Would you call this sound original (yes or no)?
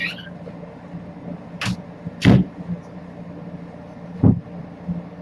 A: yes